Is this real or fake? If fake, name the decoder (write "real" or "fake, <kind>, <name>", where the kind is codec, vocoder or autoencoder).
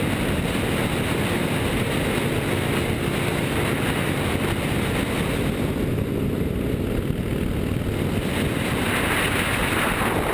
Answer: real